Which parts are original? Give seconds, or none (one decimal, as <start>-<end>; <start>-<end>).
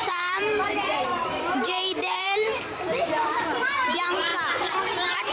4.3-5.3